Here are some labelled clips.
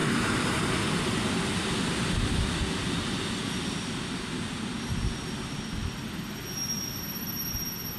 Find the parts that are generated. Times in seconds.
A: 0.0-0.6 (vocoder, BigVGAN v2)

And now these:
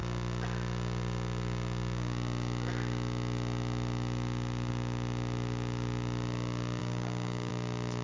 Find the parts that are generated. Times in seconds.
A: 6.8-7.5 (codec, DAC)

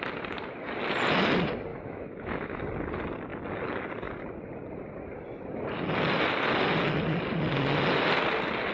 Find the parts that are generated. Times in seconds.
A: 1.7-2.6 (autoencoder, DAC-VAE)

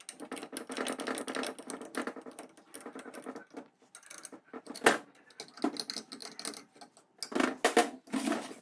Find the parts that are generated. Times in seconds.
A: none

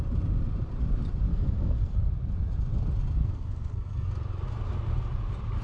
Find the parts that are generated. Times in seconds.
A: 1.3-2.1 (codec, SNAC); 3.2-4.1